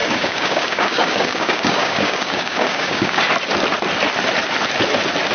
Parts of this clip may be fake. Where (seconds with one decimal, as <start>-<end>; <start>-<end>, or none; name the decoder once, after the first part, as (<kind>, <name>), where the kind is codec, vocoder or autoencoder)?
0.0-3.2 (codec, DAC)